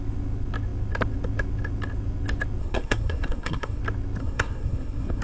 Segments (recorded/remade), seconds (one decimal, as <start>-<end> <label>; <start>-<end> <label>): 0.0-2.6 recorded; 2.6-3.8 remade; 3.8-4.2 recorded; 4.2-5.2 remade